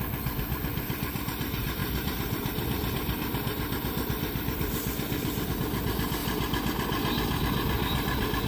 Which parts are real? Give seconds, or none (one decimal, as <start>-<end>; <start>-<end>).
0.0-1.8; 5.5-8.5